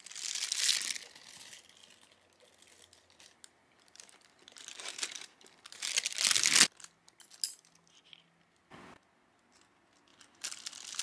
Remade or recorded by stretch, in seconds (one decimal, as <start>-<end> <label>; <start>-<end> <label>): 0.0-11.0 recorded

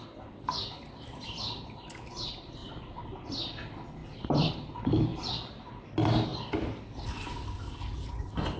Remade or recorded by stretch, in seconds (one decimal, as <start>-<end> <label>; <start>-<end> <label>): 0.0-2.6 recorded; 2.6-3.3 remade; 3.3-4.0 recorded; 4.0-4.5 remade; 4.5-5.1 recorded; 5.1-5.8 remade; 5.8-8.6 recorded

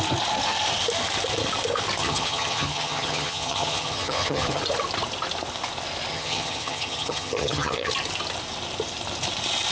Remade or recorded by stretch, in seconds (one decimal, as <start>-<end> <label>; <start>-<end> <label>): 0.0-2.0 recorded; 2.0-4.6 remade; 4.6-6.1 recorded; 6.1-7.9 remade; 7.9-9.7 recorded

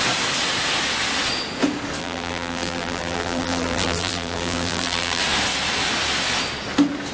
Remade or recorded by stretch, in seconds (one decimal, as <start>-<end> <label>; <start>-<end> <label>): 0.0-2.0 recorded; 2.0-5.2 remade; 5.2-7.1 recorded